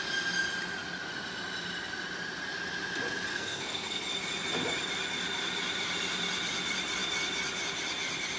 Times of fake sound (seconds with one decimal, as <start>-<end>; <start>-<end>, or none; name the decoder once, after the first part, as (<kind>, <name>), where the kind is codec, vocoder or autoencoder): 3.3-4.0 (codec, SNAC)